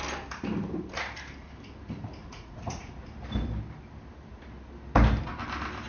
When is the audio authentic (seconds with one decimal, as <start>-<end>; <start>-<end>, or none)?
0.0-2.2; 2.9-5.9

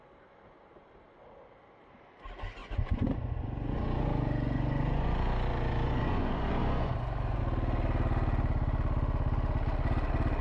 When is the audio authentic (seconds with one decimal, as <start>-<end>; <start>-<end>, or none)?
0.0-2.6; 7.4-10.4

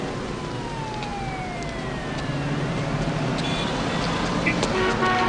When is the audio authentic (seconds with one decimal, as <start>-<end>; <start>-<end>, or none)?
0.0-5.3

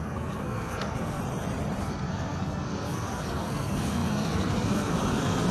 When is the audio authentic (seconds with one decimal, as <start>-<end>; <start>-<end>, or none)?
1.2-1.8

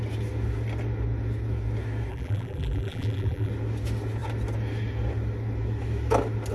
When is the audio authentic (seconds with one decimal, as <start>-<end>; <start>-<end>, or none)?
0.0-2.1; 3.5-6.5

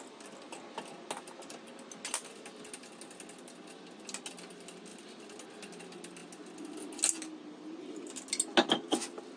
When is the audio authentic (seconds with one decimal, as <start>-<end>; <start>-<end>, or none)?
0.0-9.4